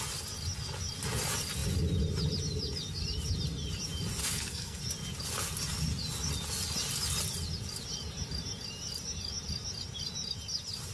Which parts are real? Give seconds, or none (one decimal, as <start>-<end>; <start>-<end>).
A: 0.0-4.2; 4.8-10.9